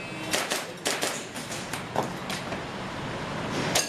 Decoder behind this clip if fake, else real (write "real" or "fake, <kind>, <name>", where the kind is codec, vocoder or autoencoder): real